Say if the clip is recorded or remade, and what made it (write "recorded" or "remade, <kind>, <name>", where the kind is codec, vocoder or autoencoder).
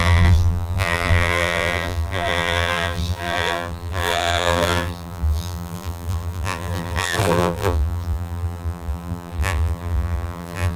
remade, vocoder, BigVGAN v2